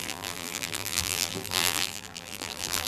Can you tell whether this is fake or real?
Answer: fake